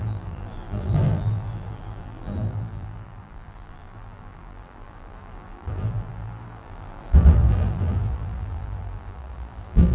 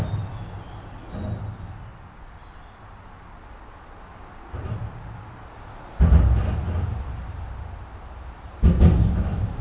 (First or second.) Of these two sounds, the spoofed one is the first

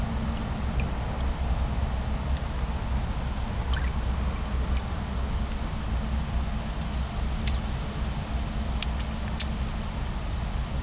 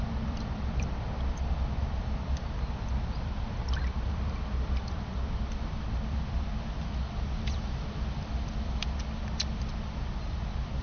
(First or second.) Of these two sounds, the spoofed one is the second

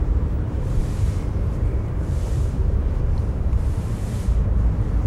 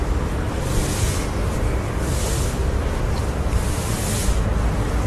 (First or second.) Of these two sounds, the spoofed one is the first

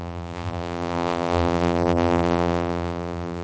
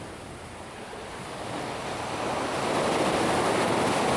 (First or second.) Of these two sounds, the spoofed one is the first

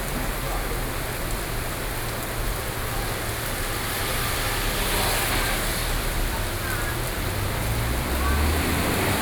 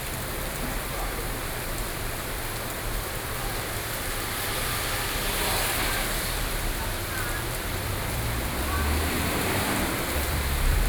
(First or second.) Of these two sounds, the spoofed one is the second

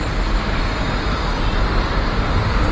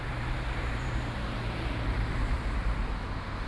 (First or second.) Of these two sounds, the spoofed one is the second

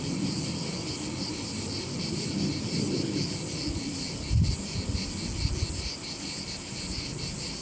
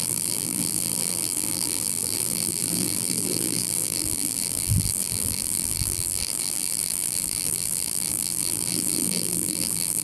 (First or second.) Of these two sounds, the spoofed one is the second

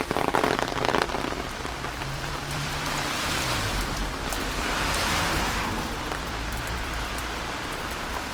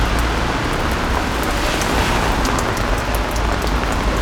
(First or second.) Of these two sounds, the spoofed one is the first